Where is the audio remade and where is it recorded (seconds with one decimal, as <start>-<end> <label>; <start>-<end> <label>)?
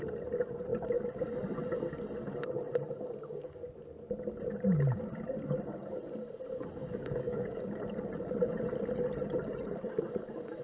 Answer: 0.0-6.8 recorded; 6.8-7.8 remade; 7.8-10.6 recorded